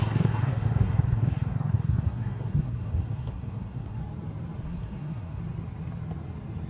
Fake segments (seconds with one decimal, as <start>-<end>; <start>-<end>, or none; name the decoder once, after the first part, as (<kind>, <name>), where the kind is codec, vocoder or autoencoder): 0.0-4.0 (codec, SNAC); 4.6-5.4